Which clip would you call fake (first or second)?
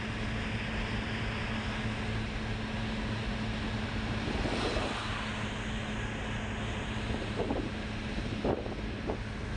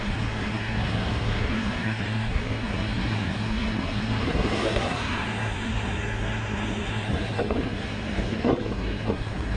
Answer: second